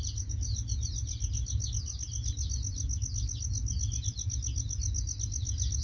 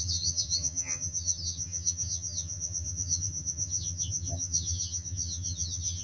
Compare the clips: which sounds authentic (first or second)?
first